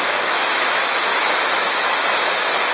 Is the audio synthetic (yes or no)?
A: yes